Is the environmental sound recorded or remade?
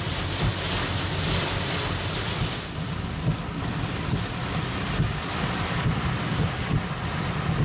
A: recorded